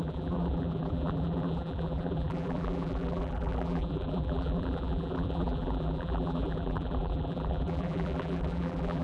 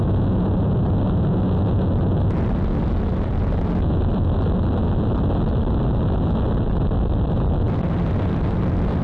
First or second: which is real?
second